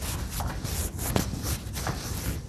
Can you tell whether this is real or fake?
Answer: real